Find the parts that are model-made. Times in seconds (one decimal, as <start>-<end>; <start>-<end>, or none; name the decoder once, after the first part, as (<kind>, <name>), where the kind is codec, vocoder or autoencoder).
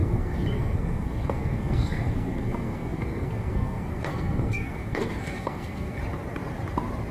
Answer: 0.0-6.0 (codec, SNAC)